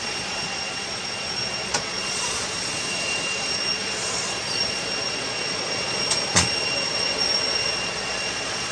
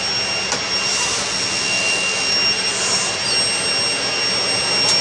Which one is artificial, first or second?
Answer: first